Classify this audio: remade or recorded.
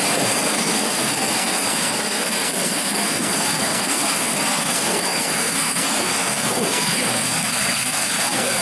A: remade